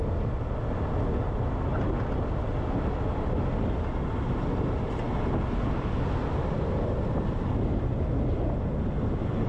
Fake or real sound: real